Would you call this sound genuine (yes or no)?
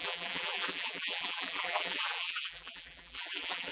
no